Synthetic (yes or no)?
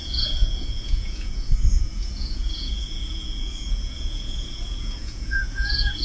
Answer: yes